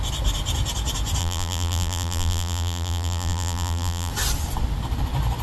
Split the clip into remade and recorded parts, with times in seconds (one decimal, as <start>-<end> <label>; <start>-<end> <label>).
0.0-1.2 recorded; 1.2-4.1 remade; 4.1-5.4 recorded

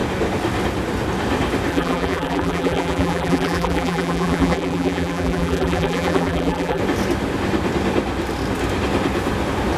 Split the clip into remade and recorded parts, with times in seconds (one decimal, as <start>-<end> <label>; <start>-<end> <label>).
0.0-1.7 recorded; 1.7-6.8 remade; 6.8-9.8 recorded

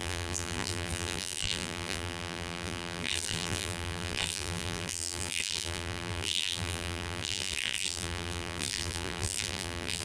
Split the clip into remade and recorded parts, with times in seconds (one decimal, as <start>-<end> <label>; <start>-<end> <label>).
0.0-10.0 remade

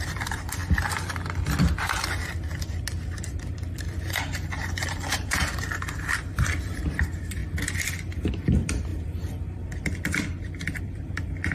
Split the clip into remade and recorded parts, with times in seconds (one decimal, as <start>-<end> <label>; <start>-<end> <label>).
0.0-0.6 remade; 0.6-3.0 recorded; 3.0-7.4 remade; 7.4-8.3 recorded; 8.3-11.5 remade

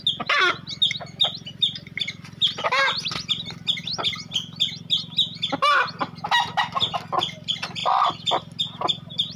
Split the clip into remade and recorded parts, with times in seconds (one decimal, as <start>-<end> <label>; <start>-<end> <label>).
0.0-9.4 recorded

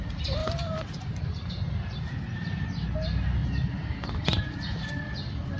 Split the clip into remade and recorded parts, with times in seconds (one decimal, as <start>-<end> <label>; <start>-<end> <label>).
0.0-0.4 recorded; 0.4-1.5 remade; 1.5-3.4 recorded; 3.4-4.9 remade; 4.9-5.6 recorded

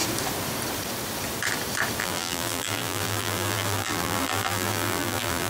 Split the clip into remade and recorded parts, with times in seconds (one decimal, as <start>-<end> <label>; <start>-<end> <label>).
0.0-2.0 recorded; 2.0-5.5 remade